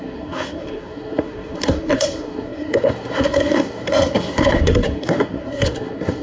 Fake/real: fake